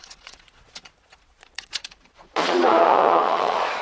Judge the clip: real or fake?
fake